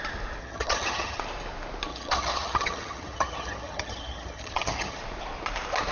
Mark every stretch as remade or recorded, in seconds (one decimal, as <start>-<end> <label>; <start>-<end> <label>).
0.0-0.4 recorded; 0.4-1.2 remade; 1.2-1.9 recorded; 1.9-5.0 remade; 5.0-5.9 recorded